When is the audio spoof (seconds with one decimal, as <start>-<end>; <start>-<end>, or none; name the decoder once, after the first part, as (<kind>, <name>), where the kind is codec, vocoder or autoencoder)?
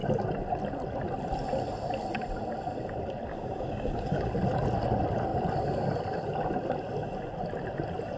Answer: 3.3-4.3 (codec, DAC)